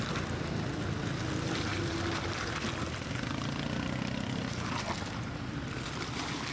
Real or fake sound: real